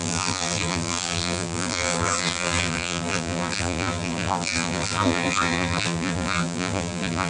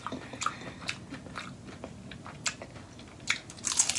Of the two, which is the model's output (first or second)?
first